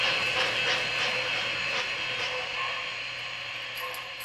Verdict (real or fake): real